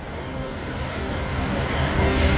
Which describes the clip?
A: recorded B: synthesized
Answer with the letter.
B